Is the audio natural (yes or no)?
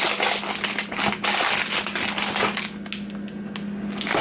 yes